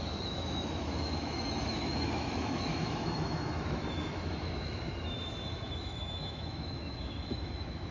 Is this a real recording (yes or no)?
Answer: no